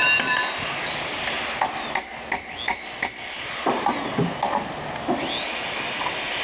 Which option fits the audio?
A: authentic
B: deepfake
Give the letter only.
A